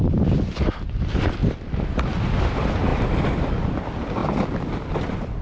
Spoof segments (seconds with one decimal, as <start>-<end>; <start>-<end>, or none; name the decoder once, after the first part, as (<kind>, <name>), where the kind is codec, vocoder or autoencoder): 0.0-2.9 (vocoder, BigVGAN v2); 3.6-4.2; 5.0-5.4